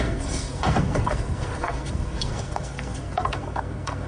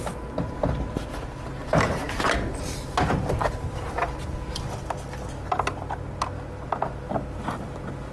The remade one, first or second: first